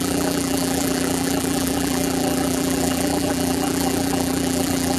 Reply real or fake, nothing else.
fake